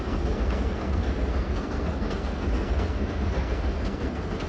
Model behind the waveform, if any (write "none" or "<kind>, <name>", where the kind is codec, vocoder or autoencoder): codec, SNAC